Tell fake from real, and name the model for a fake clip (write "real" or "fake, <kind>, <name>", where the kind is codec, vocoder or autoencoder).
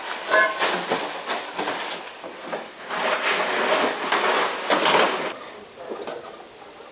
real